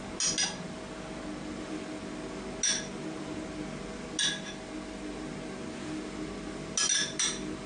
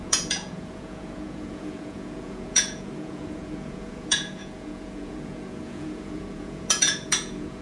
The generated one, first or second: second